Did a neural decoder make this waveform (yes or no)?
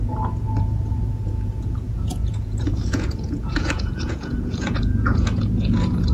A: yes